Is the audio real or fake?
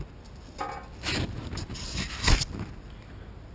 real